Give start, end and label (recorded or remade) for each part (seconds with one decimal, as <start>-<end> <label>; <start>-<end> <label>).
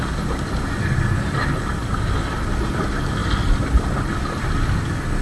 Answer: 0.0-5.2 recorded